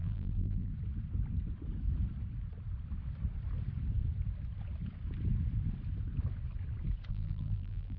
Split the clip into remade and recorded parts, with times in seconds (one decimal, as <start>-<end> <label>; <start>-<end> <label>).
0.0-0.7 remade; 0.7-7.1 recorded; 7.1-8.0 remade

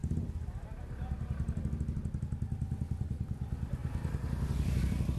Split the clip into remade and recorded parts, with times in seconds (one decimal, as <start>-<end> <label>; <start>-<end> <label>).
0.0-5.2 recorded